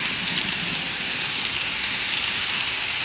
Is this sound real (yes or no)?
yes